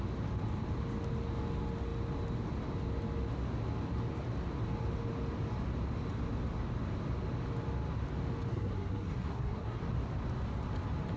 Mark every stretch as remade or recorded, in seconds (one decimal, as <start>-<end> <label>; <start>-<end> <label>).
0.0-8.5 recorded; 8.5-9.8 remade; 9.8-11.2 recorded